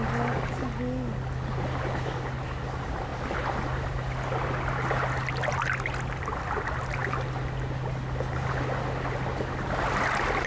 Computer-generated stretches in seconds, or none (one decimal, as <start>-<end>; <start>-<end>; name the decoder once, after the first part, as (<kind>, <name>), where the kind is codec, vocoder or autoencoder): none